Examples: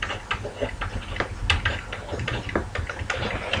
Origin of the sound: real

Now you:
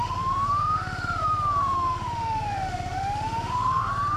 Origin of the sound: fake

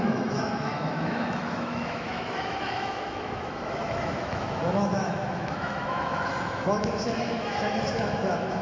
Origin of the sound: fake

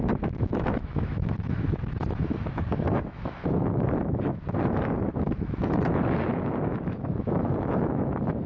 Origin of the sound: fake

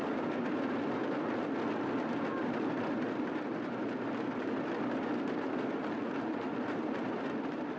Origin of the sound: real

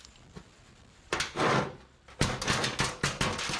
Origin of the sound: real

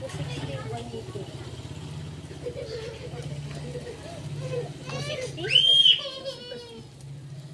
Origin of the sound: real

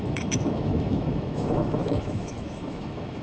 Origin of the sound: fake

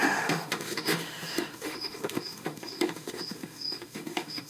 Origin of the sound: fake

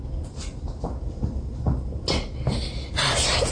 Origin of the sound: real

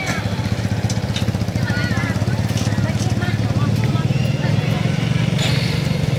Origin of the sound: real